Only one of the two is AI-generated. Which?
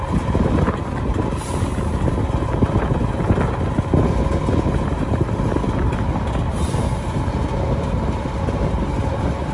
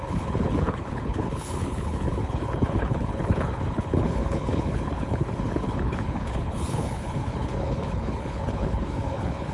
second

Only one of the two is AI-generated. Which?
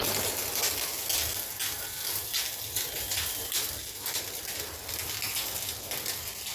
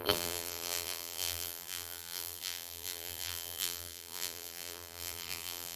second